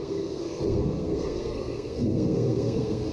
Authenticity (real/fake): fake